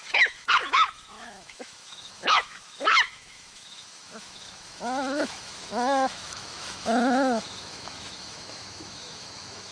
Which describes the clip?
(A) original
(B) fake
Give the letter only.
B